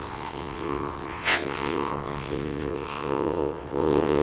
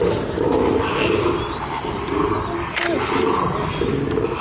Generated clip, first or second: first